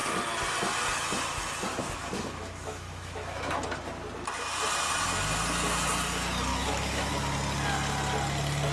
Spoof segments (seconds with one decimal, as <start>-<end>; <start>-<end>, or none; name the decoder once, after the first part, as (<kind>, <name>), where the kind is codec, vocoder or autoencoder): 1.7-3.5 (autoencoder, DAC-VAE); 6.5-7.1